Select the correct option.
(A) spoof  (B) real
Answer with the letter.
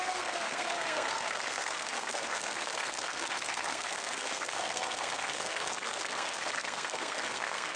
A